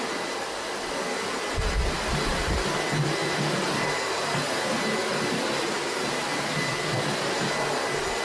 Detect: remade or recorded recorded